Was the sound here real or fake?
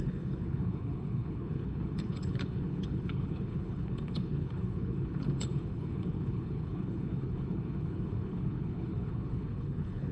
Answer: fake